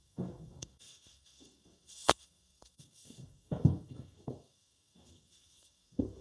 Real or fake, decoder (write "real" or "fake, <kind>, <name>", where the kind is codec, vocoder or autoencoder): fake, codec, SNAC